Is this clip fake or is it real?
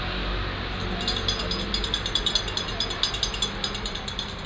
real